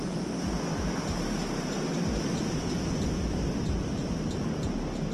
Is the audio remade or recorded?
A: recorded